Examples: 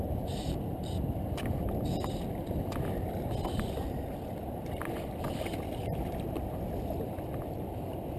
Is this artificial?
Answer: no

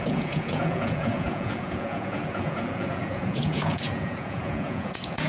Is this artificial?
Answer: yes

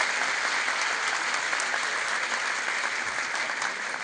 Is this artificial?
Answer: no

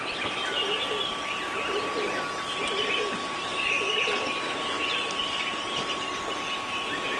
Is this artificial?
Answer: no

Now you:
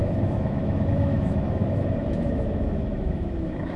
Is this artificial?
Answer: yes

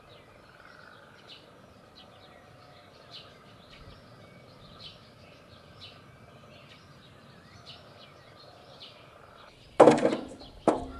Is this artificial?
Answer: no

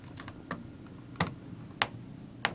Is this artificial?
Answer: no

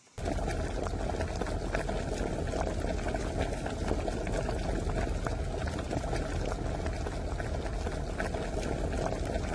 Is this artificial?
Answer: no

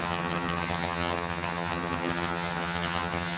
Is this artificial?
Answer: yes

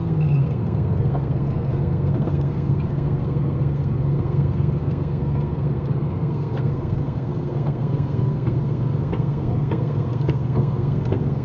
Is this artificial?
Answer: yes